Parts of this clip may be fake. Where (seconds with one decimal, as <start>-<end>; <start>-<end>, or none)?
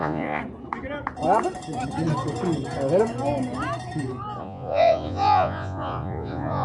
0.0-0.4; 4.4-6.6